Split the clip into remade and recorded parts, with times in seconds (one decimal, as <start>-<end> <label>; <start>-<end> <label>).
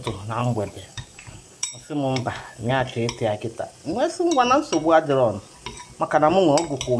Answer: 0.0-0.4 recorded; 0.4-2.7 remade; 2.7-7.0 recorded